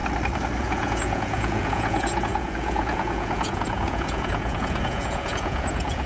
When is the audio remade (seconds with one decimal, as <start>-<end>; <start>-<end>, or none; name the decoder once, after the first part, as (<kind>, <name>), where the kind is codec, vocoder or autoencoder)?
0.6-6.1 (vocoder, Vocos)

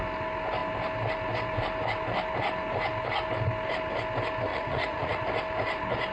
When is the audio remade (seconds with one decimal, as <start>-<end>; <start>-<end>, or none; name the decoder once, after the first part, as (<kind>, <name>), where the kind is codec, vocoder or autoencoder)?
4.5-5.2 (vocoder, Vocos)